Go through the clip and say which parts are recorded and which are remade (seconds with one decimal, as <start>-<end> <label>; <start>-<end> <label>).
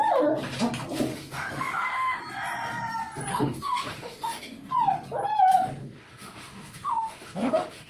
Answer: 0.0-1.1 recorded; 1.1-2.2 remade; 2.2-3.3 recorded; 3.3-4.7 remade; 4.7-5.8 recorded; 5.8-7.9 remade